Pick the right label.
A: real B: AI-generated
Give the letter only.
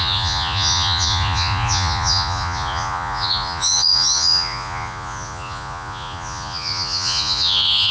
B